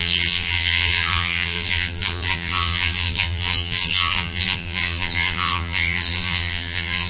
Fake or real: fake